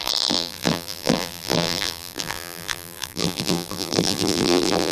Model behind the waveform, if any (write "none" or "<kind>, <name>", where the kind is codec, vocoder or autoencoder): vocoder, BigVGAN v2